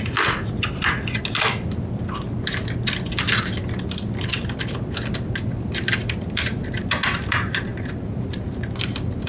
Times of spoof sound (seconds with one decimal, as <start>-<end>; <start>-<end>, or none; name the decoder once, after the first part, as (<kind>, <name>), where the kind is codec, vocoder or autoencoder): 7.7-9.3 (vocoder, BigVGAN v2)

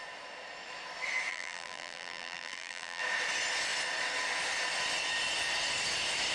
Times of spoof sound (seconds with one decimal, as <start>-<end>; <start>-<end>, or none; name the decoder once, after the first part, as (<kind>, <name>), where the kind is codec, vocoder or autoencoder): 1.3-3.0 (vocoder, BigVGAN v2)

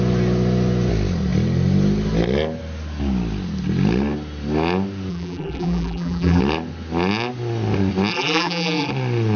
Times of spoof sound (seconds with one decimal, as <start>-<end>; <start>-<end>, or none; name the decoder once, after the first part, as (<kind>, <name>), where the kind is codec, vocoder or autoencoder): 5.1-6.4 (vocoder, BigVGAN v2); 8.1-8.9

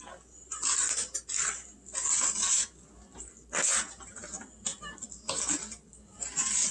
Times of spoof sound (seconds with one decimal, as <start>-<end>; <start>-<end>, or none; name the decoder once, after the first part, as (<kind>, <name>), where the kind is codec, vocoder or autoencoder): none

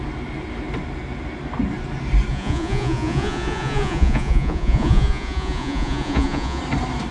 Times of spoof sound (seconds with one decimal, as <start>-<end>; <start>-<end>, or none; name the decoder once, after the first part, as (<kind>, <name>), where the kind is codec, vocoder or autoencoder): 2.3-6.6 (vocoder, Vocos)

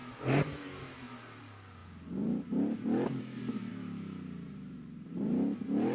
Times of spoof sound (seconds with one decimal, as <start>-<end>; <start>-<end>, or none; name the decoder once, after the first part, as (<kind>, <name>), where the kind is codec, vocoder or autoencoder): 0.0-1.4 (vocoder, BigVGAN v2); 3.7-5.2